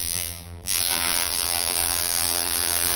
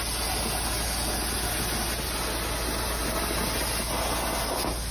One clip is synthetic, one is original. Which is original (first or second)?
second